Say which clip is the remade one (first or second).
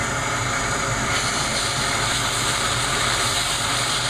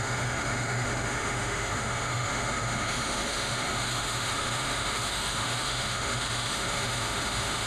second